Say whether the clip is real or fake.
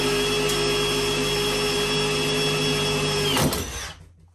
real